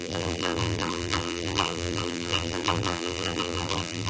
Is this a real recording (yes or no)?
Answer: no